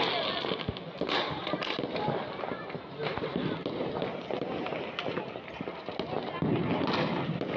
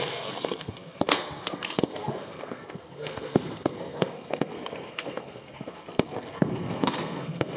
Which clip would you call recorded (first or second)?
first